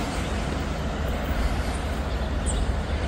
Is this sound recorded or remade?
recorded